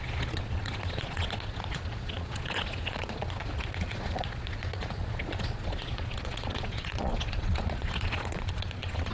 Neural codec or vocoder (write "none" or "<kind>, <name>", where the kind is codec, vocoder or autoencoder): vocoder, Vocos